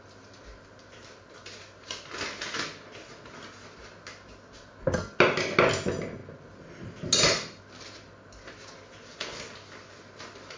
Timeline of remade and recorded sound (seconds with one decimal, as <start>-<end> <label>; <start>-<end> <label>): 0.0-10.6 recorded